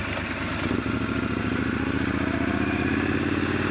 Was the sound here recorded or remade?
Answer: recorded